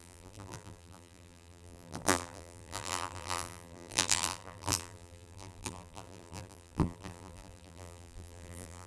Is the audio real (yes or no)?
no